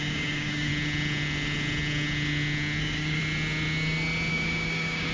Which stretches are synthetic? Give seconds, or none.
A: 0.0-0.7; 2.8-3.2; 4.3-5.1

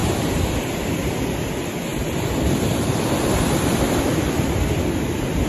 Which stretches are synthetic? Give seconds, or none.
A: 1.9-3.7